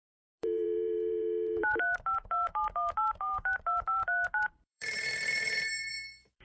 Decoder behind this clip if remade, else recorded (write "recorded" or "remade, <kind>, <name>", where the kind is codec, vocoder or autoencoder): remade, vocoder, BigVGAN v2